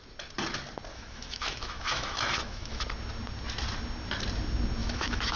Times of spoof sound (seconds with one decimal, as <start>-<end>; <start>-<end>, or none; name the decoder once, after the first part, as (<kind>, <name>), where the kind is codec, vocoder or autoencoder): 0.9-2.8 (autoencoder, DAC-VAE); 4.8-5.4